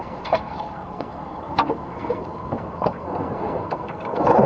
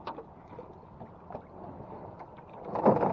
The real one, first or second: second